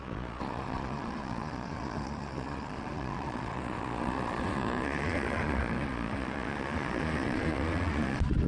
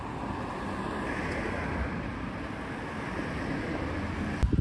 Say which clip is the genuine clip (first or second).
second